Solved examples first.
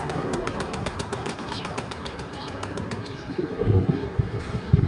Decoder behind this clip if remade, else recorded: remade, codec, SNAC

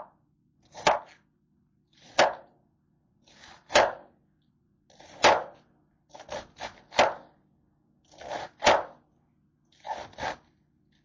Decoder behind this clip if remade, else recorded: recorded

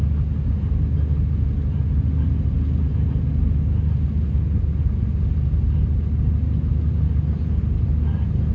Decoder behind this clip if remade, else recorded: recorded